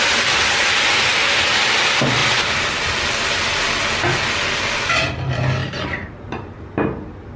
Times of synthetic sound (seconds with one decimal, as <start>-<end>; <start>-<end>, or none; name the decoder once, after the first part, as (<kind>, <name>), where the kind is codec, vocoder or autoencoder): 0.6-1.3 (vocoder, BigVGAN v2); 5.6-6.2